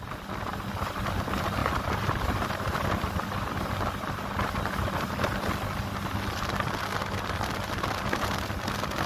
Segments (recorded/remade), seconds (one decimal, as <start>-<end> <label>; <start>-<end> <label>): 0.0-1.6 recorded; 1.6-3.4 remade; 3.4-9.1 recorded